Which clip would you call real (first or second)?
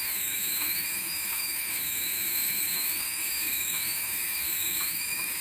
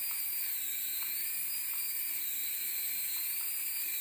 second